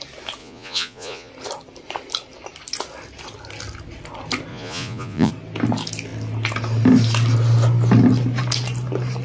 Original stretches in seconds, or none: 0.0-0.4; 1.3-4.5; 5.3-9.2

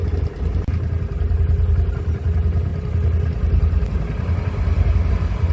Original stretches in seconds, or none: 0.0-5.5

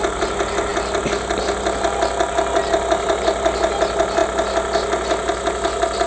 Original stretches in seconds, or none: 0.0-6.1

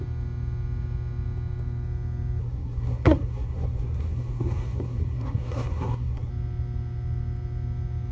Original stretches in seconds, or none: 0.0-2.4; 6.3-8.1

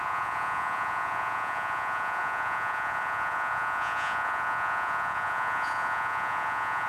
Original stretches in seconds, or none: none

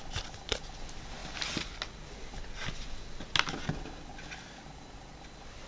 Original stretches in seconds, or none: 0.0-5.7

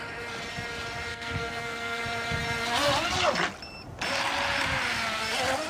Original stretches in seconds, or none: 0.0-1.1; 2.0-5.7